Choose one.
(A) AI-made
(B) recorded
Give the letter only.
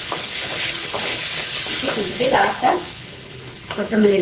A